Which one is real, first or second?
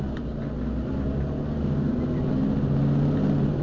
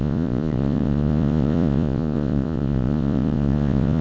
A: first